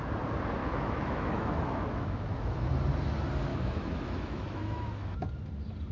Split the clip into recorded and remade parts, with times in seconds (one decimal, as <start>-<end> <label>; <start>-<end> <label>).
0.0-0.6 recorded; 0.6-2.7 remade; 2.7-3.5 recorded; 3.5-5.3 remade; 5.3-5.9 recorded